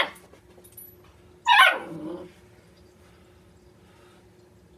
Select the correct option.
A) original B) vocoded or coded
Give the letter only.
A